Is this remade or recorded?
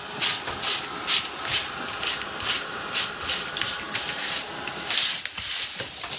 recorded